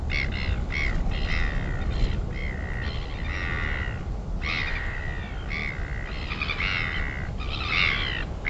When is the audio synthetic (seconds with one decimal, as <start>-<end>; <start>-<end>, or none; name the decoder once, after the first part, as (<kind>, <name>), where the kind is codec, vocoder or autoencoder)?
none